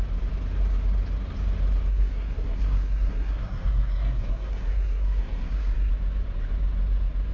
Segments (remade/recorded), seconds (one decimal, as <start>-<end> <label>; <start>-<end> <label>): 0.0-1.9 recorded; 1.9-5.9 remade; 5.9-7.3 recorded

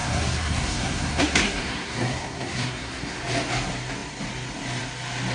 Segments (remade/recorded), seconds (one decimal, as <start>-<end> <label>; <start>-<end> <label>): 0.0-3.2 remade; 3.2-5.3 recorded

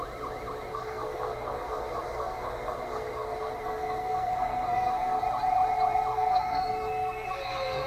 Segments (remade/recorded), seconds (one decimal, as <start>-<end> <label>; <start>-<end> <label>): 0.0-0.7 recorded; 0.7-5.2 remade; 5.2-6.1 recorded; 6.1-7.9 remade

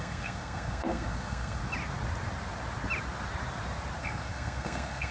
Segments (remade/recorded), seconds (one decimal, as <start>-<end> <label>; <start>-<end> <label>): 0.0-1.6 remade; 1.6-4.0 recorded; 4.0-5.1 remade

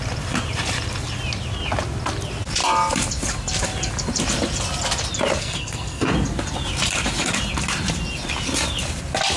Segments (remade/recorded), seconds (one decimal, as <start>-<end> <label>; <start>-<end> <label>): 0.0-5.4 recorded; 5.4-6.1 remade; 6.1-9.4 recorded

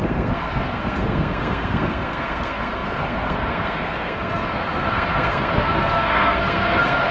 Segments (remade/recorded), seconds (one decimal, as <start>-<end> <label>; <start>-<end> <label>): 0.0-7.1 remade